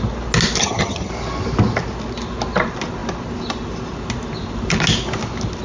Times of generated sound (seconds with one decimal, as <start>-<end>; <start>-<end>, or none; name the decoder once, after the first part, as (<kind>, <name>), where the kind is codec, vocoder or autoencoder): 0.6-1.1 (vocoder, HiFi-GAN)